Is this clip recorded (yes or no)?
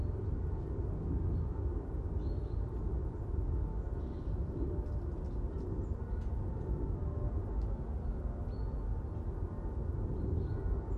yes